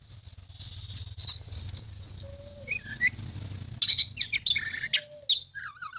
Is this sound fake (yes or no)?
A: no